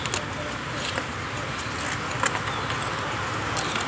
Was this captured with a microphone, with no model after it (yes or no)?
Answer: yes